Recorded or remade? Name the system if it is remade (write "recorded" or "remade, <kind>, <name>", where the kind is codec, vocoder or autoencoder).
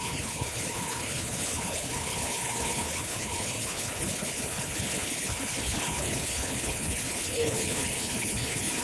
remade, codec, HILCodec